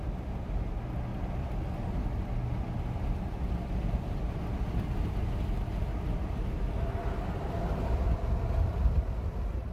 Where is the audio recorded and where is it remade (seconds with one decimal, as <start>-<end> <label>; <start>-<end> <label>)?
0.0-9.7 recorded